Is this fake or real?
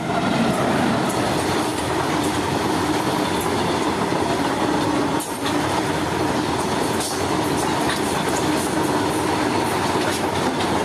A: real